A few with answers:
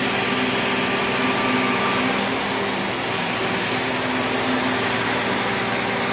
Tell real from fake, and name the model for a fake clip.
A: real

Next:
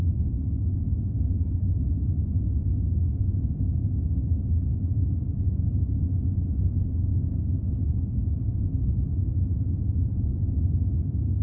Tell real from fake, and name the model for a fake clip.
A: real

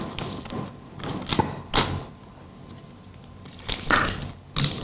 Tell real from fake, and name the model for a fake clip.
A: real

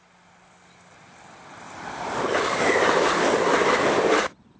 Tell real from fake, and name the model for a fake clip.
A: fake, vocoder, BigVGAN v2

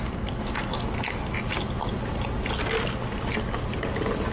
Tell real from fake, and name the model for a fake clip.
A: real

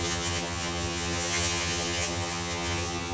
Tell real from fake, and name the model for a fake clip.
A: fake, vocoder, HiFi-GAN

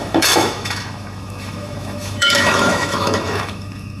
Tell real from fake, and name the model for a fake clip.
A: fake, autoencoder, DAC-VAE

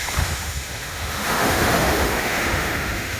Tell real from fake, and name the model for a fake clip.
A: fake, autoencoder, DAC-VAE